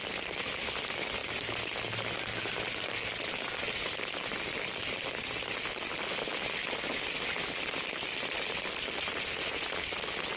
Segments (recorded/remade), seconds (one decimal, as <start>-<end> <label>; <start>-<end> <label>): 0.0-10.4 recorded